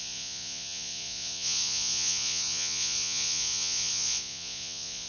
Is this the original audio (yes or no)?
no